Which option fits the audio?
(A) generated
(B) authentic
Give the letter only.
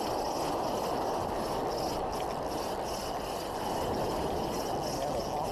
B